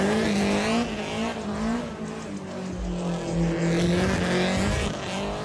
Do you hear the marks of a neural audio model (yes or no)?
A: no